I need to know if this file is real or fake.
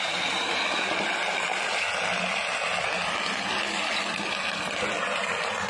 real